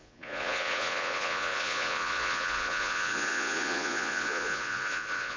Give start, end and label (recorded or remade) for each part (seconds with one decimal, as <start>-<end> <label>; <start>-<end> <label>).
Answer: 0.0-5.4 remade